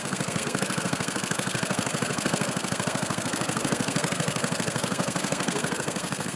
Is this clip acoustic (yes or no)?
no